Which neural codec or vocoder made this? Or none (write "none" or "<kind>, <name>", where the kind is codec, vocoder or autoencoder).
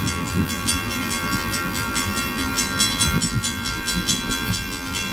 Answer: vocoder, BigVGAN v2